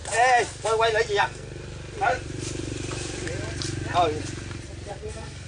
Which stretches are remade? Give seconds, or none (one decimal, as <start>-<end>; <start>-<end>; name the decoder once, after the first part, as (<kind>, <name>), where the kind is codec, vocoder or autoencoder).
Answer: 1.2-1.6 (codec, SNAC); 4.9-5.5